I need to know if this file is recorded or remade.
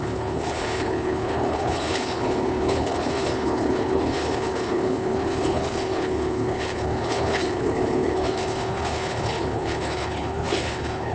remade